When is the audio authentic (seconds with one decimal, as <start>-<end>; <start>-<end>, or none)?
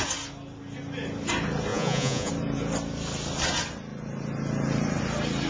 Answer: 0.0-1.7; 2.3-5.5